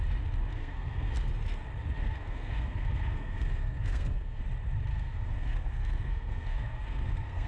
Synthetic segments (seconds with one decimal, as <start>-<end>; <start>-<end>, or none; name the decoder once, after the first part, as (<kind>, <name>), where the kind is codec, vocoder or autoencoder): 0.5-1.3 (codec, SNAC); 2.0-4.4; 4.9-7.5